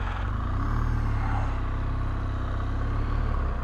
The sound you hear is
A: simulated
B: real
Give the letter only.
B